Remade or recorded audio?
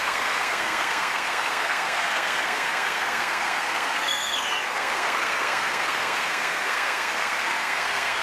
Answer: remade